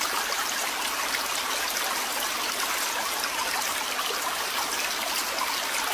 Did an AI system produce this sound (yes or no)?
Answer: no